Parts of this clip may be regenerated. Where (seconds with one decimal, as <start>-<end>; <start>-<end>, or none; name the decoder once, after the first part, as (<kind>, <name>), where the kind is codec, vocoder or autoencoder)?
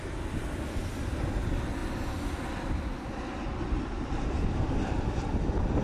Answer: none